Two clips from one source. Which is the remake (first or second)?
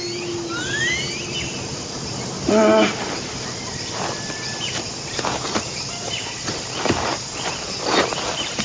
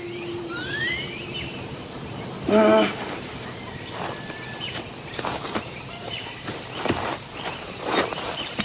second